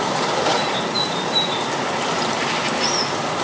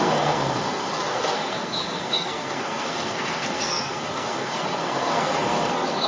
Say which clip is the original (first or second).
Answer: first